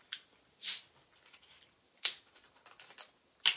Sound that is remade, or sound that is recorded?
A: recorded